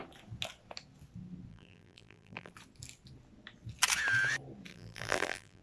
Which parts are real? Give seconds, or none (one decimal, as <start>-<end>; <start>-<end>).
0.0-1.5; 2.5-4.7